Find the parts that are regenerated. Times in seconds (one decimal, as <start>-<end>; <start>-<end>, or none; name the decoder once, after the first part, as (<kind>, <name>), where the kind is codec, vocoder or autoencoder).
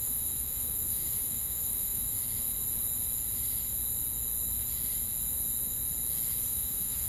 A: 0.0-2.2 (autoencoder, DAC-VAE); 6.5-7.1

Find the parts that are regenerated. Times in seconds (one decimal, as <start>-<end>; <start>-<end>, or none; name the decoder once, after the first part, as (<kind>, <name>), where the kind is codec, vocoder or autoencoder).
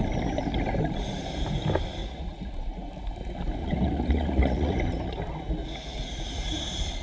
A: 2.0-2.9 (vocoder, Vocos); 3.6-4.8; 5.6-6.3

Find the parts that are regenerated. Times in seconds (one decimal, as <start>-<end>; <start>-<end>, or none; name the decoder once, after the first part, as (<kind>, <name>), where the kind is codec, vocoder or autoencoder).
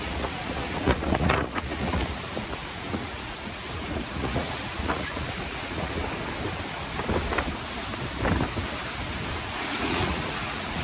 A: 0.0-6.0 (vocoder, Vocos); 9.3-10.8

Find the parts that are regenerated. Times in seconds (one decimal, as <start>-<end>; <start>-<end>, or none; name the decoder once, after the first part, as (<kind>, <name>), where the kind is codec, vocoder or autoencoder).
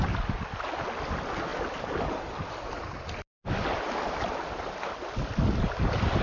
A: none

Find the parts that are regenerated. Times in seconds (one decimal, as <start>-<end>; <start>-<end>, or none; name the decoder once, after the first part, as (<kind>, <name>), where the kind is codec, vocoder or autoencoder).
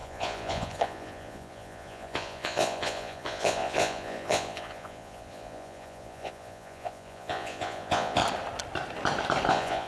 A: 0.0-8.2 (vocoder, Vocos); 9.5-9.9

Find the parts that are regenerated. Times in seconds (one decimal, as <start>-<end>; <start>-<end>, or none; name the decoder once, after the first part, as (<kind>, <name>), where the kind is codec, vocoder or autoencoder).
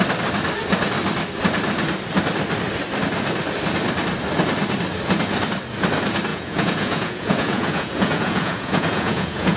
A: 6.3-9.6 (vocoder, Vocos)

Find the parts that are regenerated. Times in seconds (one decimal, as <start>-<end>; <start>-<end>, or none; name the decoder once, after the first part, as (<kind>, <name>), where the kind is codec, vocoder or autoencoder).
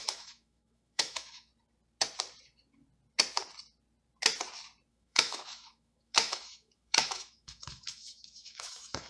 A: 0.0-1.5 (autoencoder, DAC-VAE); 4.9-9.1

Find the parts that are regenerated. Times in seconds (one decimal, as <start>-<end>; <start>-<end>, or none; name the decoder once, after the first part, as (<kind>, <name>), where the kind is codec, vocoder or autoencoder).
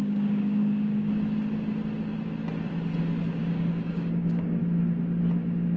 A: 0.0-1.1 (codec, DAC); 3.4-4.6